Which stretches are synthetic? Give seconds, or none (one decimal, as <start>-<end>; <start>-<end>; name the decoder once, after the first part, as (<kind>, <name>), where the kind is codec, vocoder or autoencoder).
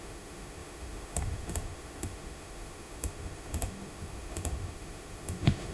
0.0-5.7 (autoencoder, DAC-VAE)